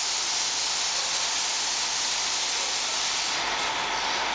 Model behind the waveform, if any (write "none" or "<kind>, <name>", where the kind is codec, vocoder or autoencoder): none